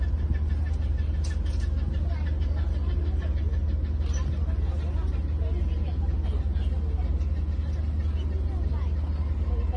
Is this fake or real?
real